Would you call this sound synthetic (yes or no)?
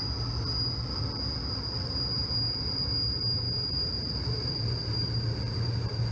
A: no